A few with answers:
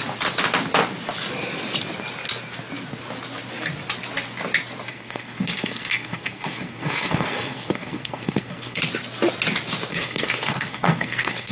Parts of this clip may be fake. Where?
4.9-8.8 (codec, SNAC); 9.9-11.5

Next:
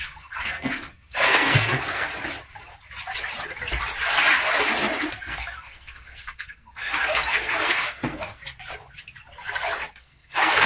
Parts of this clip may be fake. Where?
0.0-2.1 (codec, SNAC); 5.1-8.4; 9.9-10.7

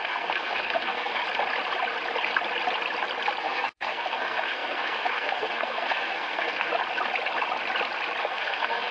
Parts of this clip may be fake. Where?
0.0-1.2 (codec, SNAC); 3.4-6.7; 8.2-8.9

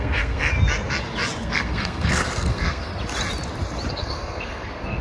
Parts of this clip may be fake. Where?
0.0-0.5 (codec, SNAC); 1.4-2.9; 3.9-5.0